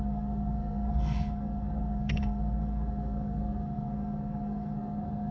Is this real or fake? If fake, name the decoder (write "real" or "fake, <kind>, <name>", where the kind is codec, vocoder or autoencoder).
fake, codec, SNAC